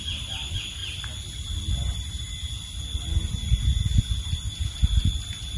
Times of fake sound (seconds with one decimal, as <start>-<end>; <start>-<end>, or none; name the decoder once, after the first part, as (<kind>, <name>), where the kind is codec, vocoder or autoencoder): none